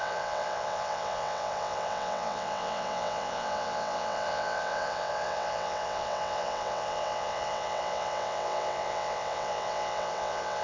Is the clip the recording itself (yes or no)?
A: no